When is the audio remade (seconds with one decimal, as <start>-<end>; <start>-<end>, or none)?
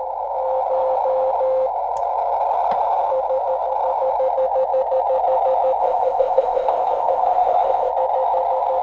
5.8-7.9